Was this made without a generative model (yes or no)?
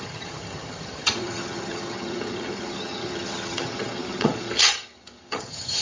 no